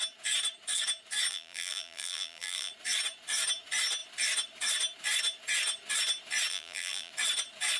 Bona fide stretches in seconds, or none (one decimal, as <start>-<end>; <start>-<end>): 0.0-1.3; 2.7-6.5; 7.1-7.8